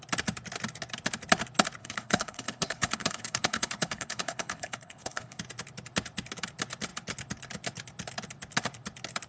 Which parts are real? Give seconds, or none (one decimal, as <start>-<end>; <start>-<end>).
0.0-1.8; 5.4-9.3